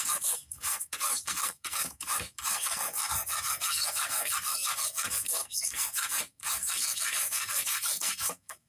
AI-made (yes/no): yes